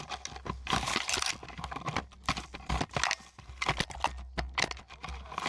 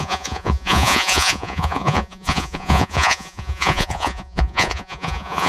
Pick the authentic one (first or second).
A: first